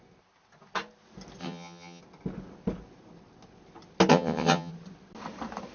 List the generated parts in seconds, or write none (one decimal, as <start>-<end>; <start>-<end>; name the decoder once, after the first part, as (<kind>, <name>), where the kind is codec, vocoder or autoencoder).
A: 1.4-2.0 (vocoder, HiFi-GAN); 4.1-4.7